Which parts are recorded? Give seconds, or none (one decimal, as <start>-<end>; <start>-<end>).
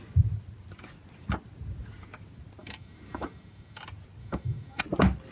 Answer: 0.0-2.6; 3.8-4.2; 4.8-5.3